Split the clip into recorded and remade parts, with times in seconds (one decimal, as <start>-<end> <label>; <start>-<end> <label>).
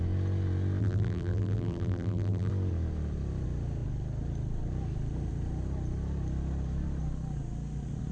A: 0.0-0.8 recorded; 0.8-2.5 remade; 2.5-8.1 recorded